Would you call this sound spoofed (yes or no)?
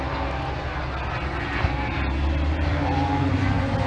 no